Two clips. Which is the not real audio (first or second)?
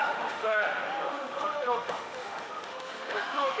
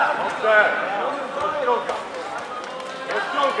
first